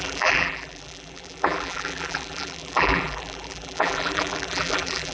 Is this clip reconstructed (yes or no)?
yes